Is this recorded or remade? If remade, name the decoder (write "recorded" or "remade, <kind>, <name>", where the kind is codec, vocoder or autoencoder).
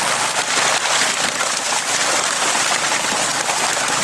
recorded